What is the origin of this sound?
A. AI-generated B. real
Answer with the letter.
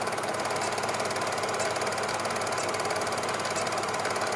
B